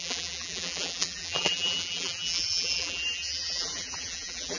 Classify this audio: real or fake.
fake